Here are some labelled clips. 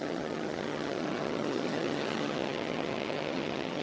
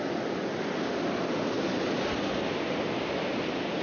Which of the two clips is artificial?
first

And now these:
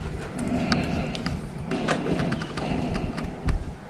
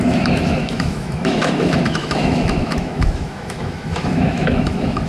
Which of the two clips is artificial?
second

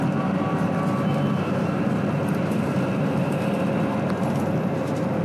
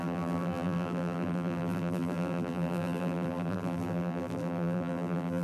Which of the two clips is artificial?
second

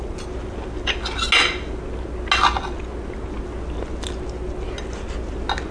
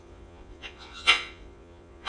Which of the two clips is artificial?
second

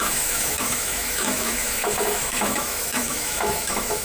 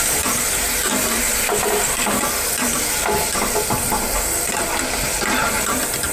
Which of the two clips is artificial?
first